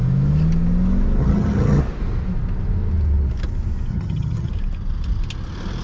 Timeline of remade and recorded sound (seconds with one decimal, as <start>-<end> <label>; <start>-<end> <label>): 0.0-1.2 recorded; 1.2-1.8 remade; 1.8-3.9 recorded; 3.9-4.5 remade; 4.5-5.8 recorded